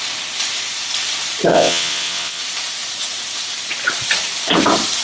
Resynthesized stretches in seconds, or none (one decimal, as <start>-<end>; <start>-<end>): 1.5-2.4